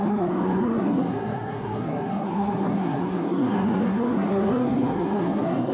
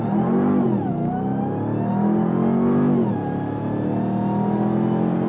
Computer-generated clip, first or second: first